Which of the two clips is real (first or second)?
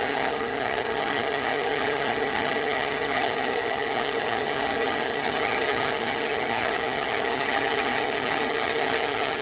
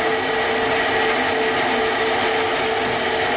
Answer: second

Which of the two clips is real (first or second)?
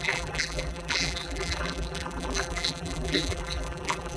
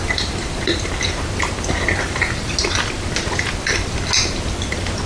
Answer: second